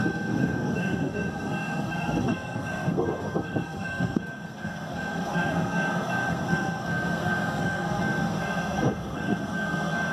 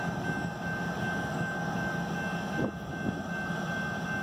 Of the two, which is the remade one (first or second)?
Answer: first